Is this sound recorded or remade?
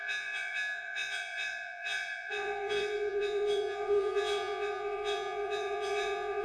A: remade